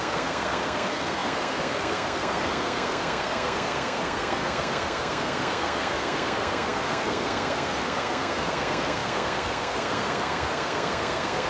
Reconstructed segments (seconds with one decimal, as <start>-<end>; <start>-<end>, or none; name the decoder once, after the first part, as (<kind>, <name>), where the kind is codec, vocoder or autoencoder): 0.0-11.5 (codec, SNAC)